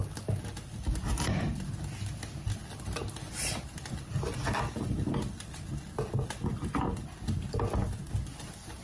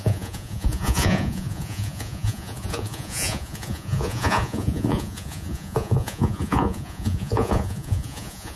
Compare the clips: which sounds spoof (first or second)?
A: second